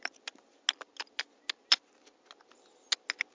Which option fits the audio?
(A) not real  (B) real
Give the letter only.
B